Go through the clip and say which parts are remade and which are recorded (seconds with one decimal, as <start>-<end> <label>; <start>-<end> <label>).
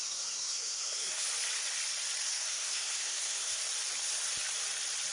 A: 0.0-1.2 remade; 1.2-2.2 recorded; 2.2-3.6 remade; 3.6-5.1 recorded